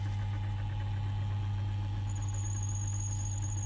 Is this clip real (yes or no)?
yes